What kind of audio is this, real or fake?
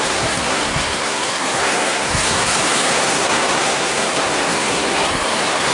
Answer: fake